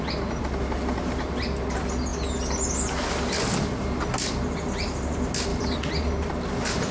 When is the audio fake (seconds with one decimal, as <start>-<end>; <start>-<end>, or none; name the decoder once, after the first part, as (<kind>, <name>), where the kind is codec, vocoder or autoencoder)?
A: 5.5-6.0 (vocoder, BigVGAN v2)